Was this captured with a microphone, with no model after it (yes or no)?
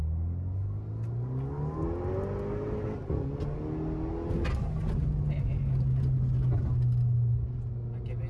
yes